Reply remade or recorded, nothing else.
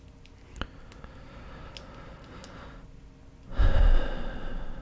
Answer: recorded